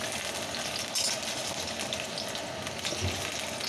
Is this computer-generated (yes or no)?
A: no